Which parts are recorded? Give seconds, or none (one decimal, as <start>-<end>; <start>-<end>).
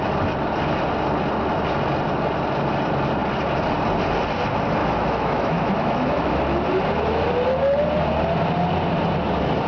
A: 0.0-4.8; 6.3-9.7